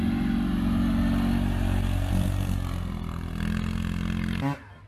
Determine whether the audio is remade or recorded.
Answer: remade